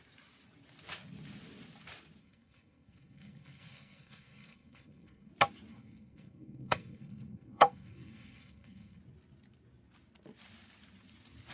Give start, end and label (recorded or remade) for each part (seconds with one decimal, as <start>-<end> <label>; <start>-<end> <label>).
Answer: 0.0-2.2 recorded; 2.2-5.3 remade; 5.3-5.7 recorded; 5.7-9.0 remade; 9.0-11.5 recorded